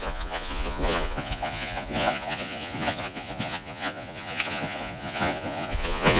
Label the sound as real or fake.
fake